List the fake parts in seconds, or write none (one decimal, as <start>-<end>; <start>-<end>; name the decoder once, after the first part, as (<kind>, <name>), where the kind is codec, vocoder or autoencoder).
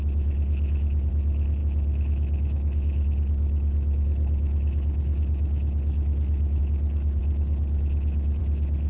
none